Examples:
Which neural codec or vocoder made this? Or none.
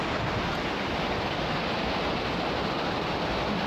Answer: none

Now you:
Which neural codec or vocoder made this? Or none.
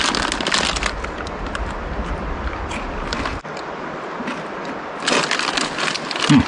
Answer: none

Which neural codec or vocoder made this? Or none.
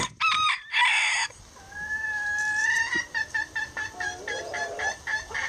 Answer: none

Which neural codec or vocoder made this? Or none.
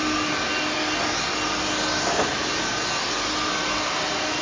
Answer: none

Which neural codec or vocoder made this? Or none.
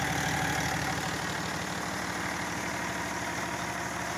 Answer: none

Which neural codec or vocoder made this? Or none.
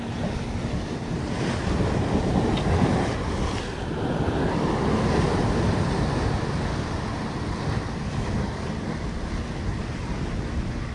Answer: none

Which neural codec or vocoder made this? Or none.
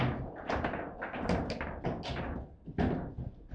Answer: none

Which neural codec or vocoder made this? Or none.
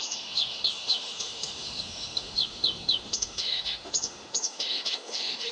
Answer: autoencoder, DAC-VAE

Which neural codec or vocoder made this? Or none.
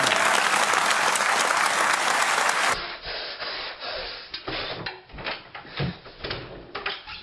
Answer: vocoder, BigVGAN v2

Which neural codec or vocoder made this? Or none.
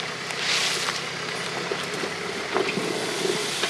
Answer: none